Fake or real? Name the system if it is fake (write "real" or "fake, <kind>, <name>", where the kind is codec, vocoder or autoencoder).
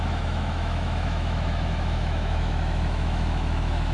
fake, autoencoder, DAC-VAE